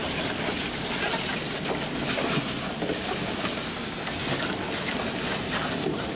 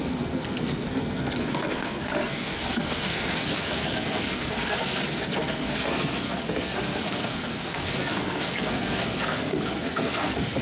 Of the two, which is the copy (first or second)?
second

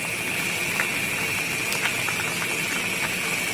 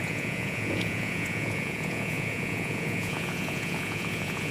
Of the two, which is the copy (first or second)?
second